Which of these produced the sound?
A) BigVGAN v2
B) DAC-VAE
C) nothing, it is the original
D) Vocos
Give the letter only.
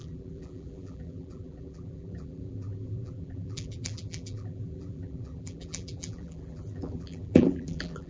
A